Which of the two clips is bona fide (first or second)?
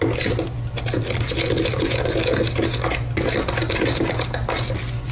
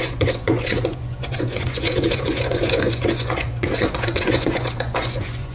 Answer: first